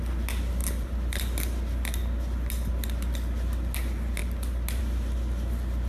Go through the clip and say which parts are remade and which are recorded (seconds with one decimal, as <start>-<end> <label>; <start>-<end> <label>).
0.0-5.9 recorded